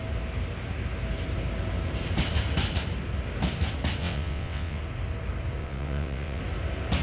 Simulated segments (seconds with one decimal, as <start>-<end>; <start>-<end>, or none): 4.0-4.8; 5.6-6.4